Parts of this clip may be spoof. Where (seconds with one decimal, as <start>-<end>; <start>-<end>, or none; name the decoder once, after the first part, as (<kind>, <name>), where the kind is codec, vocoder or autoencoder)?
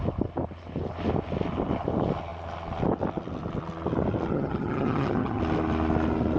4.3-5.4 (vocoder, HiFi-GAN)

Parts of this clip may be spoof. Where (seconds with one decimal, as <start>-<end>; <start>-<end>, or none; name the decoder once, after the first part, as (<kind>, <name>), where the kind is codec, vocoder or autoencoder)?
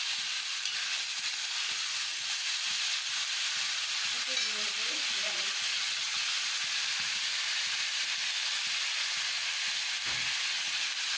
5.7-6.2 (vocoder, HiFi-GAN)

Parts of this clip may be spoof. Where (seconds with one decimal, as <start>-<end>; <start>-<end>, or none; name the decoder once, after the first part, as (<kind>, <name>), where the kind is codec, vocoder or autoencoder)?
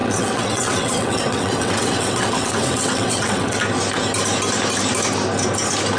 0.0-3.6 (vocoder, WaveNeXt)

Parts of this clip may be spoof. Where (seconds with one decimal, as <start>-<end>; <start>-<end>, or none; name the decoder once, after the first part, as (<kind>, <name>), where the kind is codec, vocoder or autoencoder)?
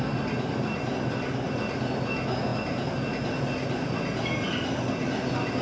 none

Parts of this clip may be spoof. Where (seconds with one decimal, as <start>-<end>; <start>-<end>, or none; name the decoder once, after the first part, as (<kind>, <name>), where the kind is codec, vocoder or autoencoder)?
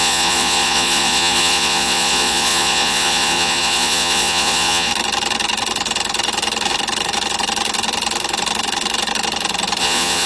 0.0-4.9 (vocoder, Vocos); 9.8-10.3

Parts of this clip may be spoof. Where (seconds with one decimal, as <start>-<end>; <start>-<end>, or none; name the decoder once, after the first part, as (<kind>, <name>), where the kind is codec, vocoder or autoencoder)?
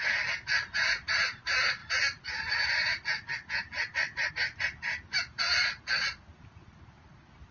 none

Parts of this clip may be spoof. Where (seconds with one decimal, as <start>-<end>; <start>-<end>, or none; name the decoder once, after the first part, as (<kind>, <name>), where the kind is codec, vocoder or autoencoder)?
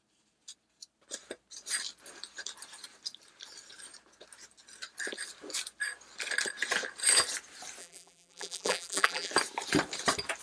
7.8-9.3 (vocoder, BigVGAN v2)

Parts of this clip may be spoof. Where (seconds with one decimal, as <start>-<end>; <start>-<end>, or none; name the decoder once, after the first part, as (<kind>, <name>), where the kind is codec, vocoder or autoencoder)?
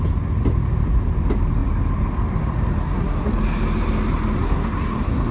2.8-3.3 (codec, SNAC); 4.4-5.3